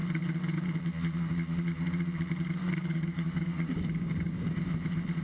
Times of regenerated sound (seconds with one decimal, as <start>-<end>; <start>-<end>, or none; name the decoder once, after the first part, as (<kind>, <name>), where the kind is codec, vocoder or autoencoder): 2.6-4.6 (codec, DAC)